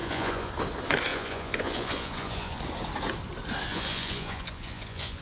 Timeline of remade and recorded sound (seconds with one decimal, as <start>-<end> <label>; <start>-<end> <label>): 0.0-0.5 remade; 0.5-1.1 recorded; 1.1-2.6 remade; 2.6-3.7 recorded; 3.7-5.2 remade

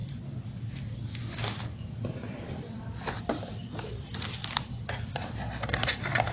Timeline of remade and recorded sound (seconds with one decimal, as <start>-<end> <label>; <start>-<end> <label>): 0.0-6.3 recorded